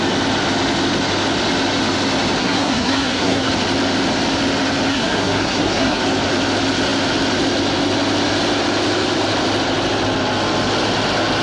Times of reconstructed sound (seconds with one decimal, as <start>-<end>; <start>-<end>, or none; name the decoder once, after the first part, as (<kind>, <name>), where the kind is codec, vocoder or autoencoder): 2.4-3.5 (codec, SNAC); 4.9-6.0